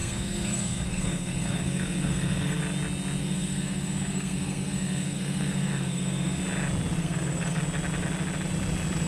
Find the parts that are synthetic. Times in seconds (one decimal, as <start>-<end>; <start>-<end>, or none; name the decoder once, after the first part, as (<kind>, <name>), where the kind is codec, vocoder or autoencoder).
0.0-2.6 (codec, SNAC); 3.2-6.4; 7.0-7.6